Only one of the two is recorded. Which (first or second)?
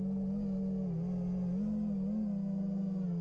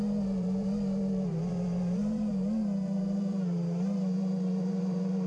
first